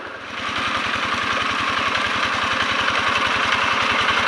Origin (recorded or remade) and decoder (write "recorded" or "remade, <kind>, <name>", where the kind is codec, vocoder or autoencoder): recorded